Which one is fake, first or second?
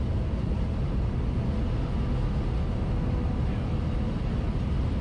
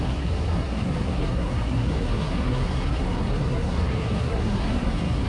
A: second